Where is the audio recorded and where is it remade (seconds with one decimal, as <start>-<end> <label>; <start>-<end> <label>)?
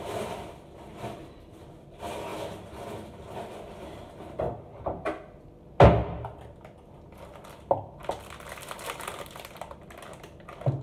0.0-10.8 recorded